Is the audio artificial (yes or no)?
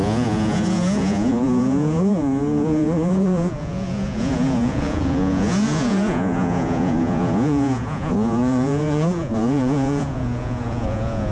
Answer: yes